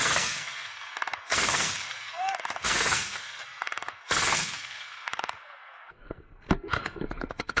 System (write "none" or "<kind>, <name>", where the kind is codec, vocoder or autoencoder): codec, SNAC